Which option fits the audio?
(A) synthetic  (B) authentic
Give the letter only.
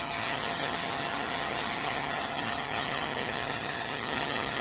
A